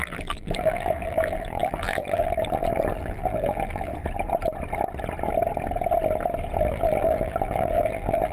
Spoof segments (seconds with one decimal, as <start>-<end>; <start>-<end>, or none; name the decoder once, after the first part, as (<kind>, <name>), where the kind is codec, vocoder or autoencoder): 0.0-3.9 (vocoder, BigVGAN v2); 6.6-8.3